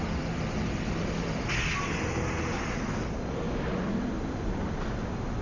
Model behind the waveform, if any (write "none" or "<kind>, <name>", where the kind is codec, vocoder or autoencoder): none